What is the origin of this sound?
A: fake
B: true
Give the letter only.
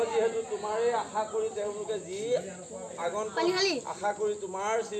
B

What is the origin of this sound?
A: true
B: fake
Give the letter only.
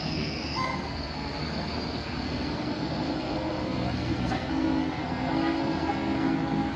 B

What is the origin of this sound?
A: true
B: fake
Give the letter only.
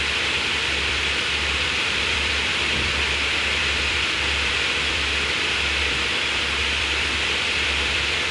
B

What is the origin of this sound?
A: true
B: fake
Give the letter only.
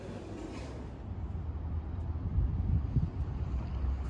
A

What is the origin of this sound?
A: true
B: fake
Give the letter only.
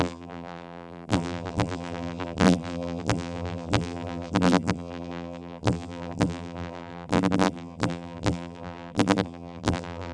B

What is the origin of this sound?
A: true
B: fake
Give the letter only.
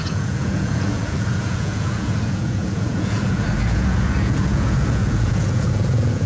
B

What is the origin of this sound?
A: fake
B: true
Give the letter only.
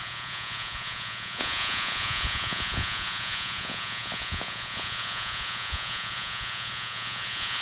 A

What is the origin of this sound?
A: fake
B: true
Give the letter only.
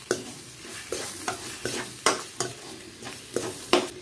A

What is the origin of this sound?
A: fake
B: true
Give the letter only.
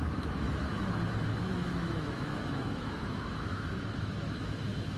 A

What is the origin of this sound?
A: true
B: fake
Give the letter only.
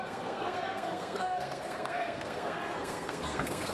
B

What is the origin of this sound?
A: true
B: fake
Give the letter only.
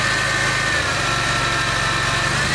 A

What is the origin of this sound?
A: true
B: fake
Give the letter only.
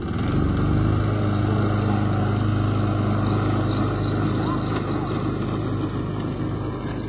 A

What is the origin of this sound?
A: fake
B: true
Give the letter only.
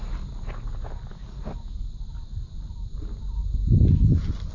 B